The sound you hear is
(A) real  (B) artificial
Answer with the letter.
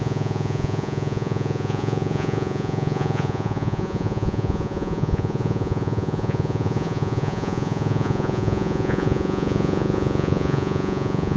B